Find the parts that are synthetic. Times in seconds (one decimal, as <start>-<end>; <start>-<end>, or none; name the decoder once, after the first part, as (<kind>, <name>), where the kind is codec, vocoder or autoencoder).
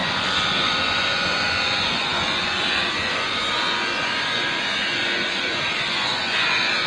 0.0-6.9 (vocoder, Vocos)